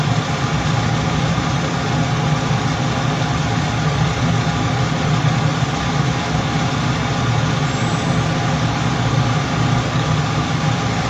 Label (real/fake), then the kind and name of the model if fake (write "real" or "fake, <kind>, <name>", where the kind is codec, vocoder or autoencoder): real